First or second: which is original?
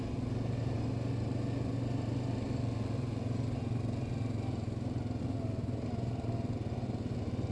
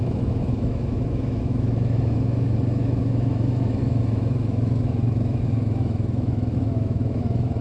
first